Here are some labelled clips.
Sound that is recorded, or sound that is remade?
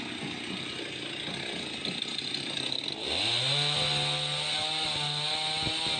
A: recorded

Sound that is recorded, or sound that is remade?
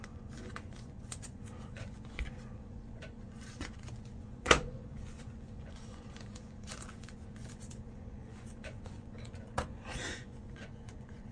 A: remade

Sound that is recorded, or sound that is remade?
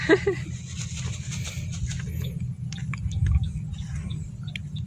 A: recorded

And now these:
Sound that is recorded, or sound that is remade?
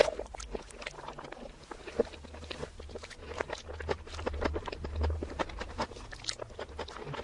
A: recorded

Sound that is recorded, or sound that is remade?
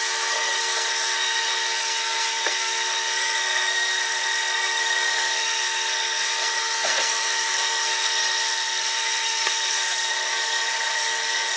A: remade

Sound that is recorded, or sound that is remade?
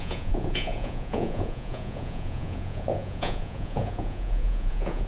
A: remade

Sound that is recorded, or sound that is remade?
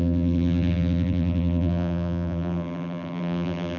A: remade